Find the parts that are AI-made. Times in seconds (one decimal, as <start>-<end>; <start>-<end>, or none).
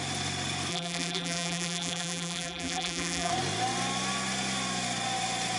0.7-3.3